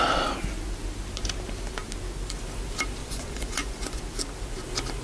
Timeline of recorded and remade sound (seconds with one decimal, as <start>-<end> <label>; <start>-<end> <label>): 0.0-3.0 recorded; 3.0-4.0 remade; 4.0-5.0 recorded